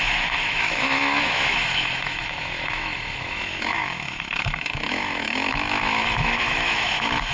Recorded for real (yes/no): no